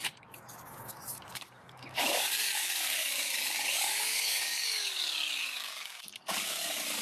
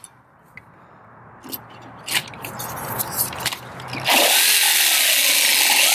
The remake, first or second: first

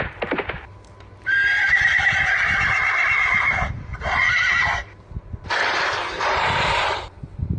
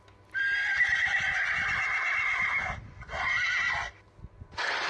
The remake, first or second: first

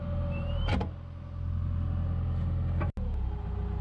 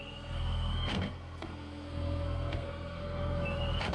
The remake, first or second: second